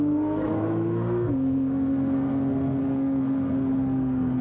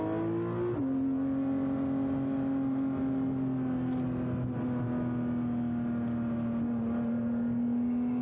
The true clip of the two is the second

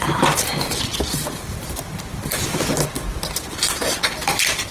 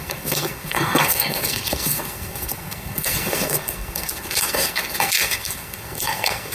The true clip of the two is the first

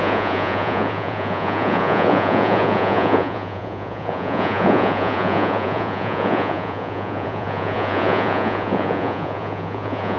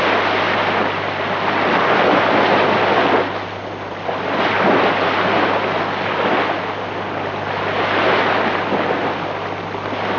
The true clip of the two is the second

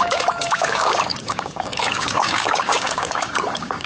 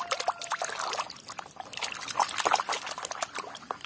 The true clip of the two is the second